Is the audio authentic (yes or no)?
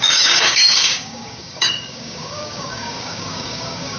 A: no